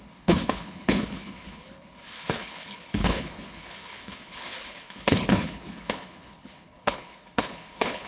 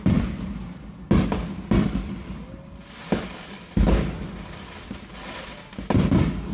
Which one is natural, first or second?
second